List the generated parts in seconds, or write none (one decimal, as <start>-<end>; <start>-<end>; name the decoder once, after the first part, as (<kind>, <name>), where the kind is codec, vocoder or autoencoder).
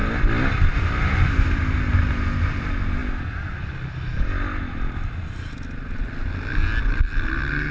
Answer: none